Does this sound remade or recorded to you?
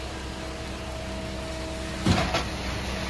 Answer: recorded